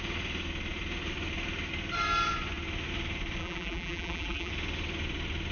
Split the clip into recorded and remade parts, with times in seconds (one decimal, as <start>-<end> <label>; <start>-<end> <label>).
0.0-3.4 recorded; 3.4-4.5 remade; 4.5-5.5 recorded